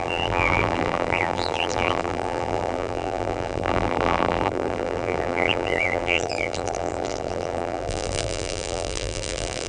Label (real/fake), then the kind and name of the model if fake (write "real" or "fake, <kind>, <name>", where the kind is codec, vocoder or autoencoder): fake, vocoder, BigVGAN v2